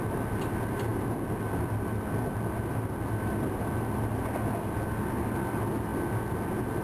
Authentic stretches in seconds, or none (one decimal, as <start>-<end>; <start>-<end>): 0.0-6.8